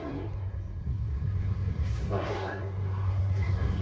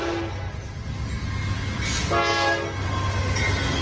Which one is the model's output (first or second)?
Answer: first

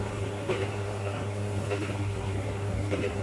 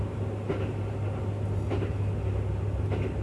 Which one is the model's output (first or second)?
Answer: first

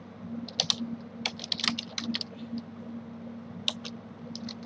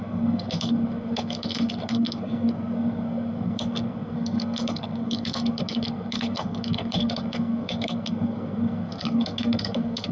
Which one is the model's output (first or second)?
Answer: second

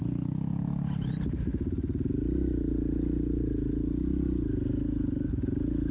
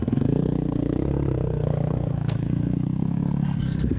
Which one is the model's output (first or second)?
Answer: second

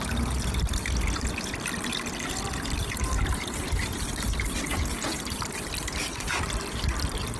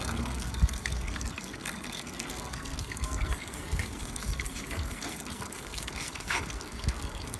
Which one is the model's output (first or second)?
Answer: second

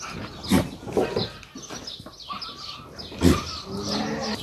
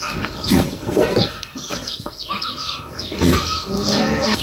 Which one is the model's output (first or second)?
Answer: second